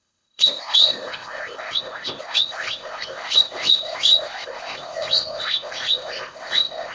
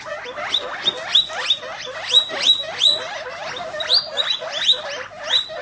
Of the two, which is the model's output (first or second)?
first